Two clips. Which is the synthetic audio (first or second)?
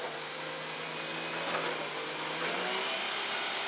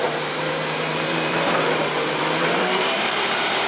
second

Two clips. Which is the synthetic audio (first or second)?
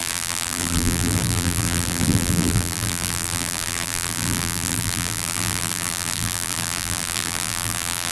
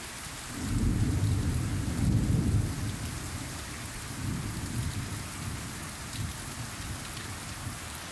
first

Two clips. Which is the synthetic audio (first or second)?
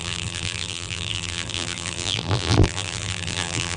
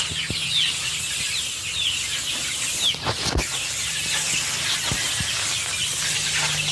first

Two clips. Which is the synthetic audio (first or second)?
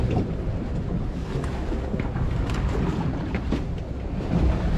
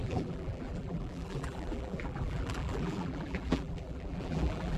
second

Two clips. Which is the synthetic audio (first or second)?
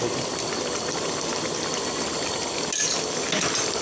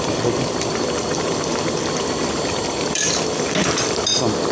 second